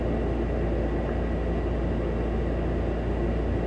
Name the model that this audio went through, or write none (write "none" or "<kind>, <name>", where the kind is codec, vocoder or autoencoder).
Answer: none